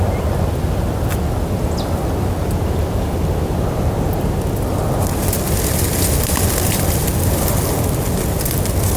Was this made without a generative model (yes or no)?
yes